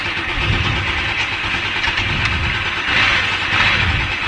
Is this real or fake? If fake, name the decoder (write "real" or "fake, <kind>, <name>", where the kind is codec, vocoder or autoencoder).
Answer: real